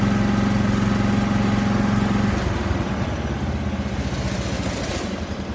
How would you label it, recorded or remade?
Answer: recorded